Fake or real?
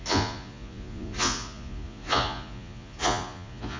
fake